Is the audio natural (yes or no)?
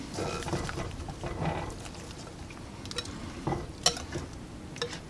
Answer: yes